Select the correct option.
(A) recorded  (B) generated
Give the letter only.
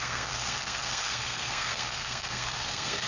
B